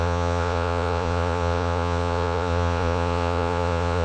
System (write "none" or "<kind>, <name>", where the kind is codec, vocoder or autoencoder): vocoder, Vocos